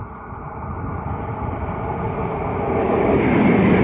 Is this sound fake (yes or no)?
yes